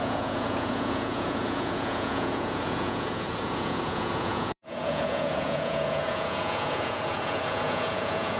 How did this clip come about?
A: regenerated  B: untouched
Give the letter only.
A